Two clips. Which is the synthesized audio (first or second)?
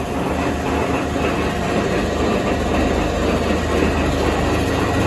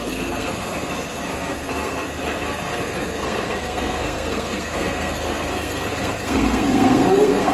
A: second